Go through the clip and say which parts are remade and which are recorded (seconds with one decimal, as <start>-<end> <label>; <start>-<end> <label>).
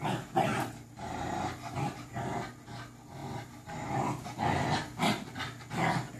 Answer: 0.0-0.5 recorded; 0.5-2.1 remade; 2.1-3.2 recorded; 3.2-4.1 remade; 4.1-6.2 recorded